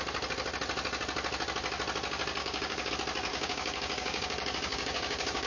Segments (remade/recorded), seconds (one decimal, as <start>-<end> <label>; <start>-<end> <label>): 0.0-2.4 recorded; 2.4-2.9 remade; 2.9-3.3 recorded; 3.3-5.5 remade